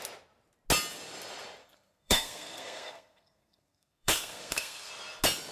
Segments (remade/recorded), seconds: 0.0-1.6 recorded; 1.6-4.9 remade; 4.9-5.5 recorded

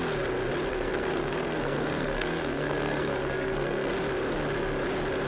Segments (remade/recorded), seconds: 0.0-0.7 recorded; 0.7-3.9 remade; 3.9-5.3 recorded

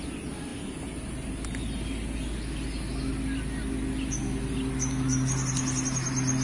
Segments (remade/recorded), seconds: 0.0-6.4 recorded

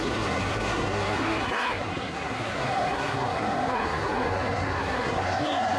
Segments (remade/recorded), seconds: 0.0-5.8 remade

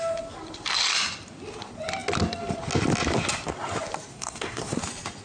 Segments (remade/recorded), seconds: 0.0-4.1 recorded; 4.1-4.8 remade; 4.8-5.2 recorded